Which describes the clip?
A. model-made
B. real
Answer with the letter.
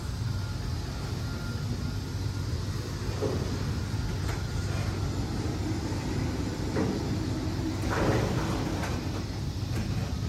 B